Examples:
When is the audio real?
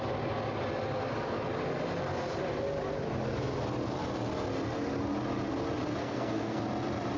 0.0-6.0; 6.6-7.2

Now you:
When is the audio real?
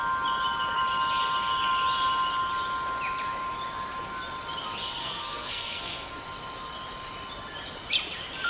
0.0-5.0; 6.1-8.5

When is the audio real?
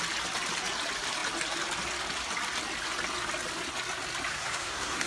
0.0-4.3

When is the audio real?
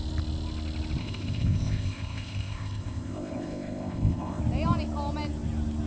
0.0-1.0; 4.4-5.9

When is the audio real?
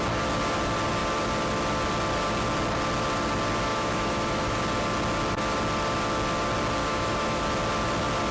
0.0-3.7; 4.6-6.8; 7.4-8.3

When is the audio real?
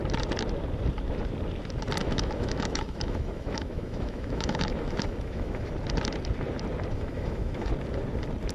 0.0-2.0; 5.7-6.9; 7.7-8.5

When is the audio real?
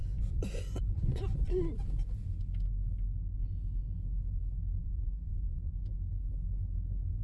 1.5-4.8; 5.7-7.2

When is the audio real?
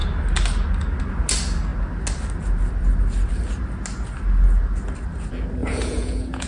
0.0-5.6